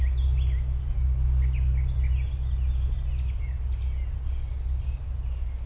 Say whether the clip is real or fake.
real